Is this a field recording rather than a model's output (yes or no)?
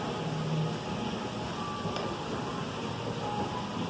yes